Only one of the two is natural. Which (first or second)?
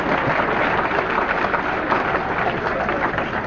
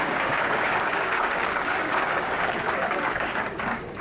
first